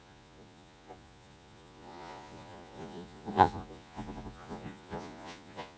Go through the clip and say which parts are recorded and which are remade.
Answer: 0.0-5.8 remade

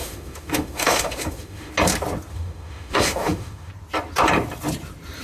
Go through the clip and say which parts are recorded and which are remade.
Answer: 0.0-1.7 remade; 1.7-2.3 recorded; 2.3-3.7 remade; 3.7-5.2 recorded

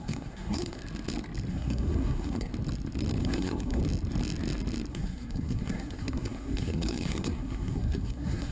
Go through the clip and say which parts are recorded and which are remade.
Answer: 0.0-0.8 remade; 0.8-1.5 recorded; 1.5-2.5 remade; 2.5-3.2 recorded; 3.2-3.8 remade; 3.8-4.9 recorded; 4.9-8.5 remade